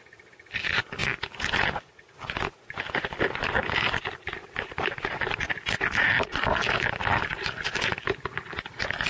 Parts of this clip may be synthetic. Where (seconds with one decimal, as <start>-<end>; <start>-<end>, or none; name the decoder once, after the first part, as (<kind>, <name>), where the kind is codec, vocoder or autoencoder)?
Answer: 1.0-2.4 (vocoder, BigVGAN v2)